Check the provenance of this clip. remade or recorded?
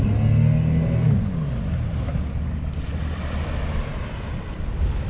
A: recorded